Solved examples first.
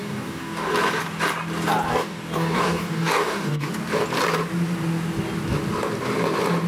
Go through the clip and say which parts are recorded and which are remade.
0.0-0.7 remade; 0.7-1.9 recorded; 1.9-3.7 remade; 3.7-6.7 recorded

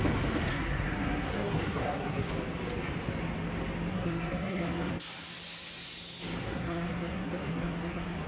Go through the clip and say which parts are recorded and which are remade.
0.0-0.5 recorded; 0.5-2.3 remade; 2.3-3.9 recorded; 3.9-4.9 remade; 4.9-6.4 recorded; 6.4-8.3 remade

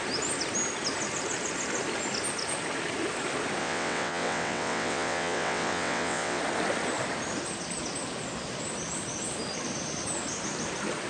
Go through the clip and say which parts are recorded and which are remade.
0.0-3.6 recorded; 3.6-6.4 remade; 6.4-11.1 recorded